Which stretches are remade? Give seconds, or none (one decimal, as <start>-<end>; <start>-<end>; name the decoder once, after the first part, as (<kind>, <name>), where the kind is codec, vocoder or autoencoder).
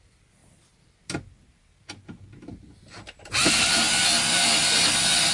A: none